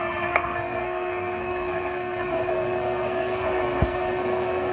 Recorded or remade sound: remade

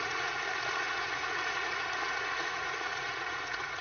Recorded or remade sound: remade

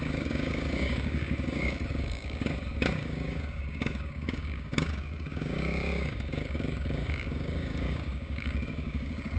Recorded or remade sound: remade